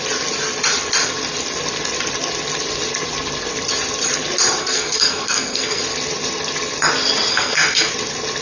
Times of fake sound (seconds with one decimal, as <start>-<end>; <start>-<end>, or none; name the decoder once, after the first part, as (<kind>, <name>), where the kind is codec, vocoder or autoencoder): 4.6-5.8 (codec, SNAC); 7.3-7.9